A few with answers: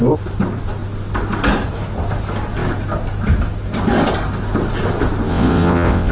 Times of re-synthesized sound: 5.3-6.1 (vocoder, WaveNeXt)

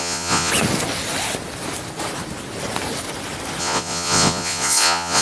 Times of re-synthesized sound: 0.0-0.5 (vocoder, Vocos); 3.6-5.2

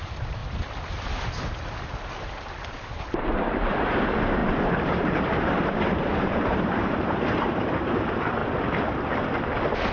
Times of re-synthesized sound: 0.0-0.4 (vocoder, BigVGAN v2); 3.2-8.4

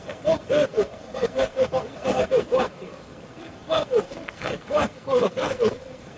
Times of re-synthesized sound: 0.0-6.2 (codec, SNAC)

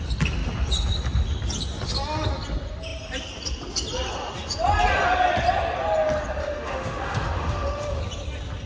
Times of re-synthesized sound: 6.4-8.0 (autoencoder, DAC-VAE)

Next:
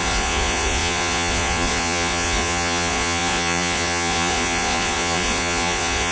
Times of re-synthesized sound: 0.0-6.1 (vocoder, Vocos)

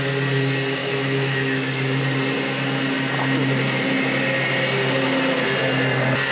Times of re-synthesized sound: 0.8-2.0 (autoencoder, DAC-VAE)